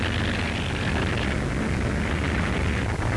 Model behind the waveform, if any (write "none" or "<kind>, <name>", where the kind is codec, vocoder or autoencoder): none